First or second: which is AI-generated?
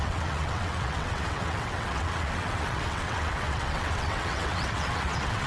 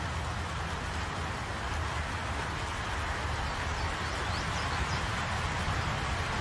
first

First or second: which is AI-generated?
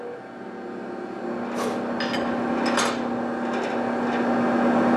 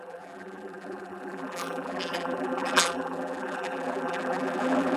second